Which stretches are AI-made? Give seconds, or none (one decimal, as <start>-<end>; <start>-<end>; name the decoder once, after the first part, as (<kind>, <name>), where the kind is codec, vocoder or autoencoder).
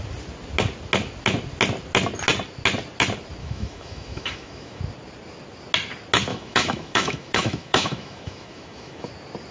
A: 3.4-4.8 (autoencoder, DAC-VAE); 6.3-9.1